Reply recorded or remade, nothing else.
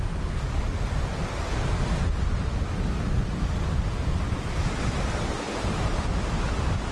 recorded